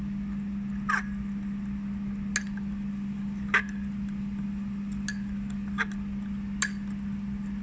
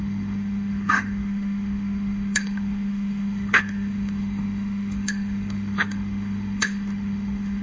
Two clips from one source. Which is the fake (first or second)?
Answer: second